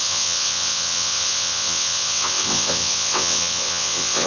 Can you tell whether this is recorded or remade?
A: remade